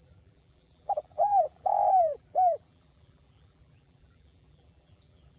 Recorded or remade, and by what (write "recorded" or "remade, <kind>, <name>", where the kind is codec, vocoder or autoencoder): remade, vocoder, BigVGAN v2